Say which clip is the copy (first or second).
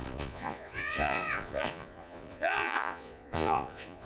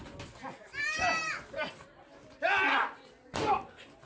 first